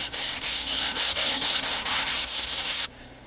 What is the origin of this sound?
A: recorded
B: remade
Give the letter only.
B